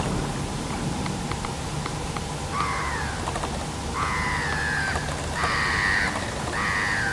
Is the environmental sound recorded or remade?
recorded